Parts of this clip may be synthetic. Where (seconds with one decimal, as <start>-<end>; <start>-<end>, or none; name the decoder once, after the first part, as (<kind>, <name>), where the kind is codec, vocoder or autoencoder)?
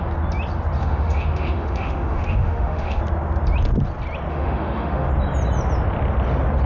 0.8-3.0 (autoencoder, DAC-VAE); 4.3-5.1